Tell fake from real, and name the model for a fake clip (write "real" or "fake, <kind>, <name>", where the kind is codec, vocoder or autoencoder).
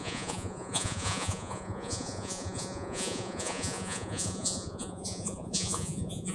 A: fake, vocoder, Vocos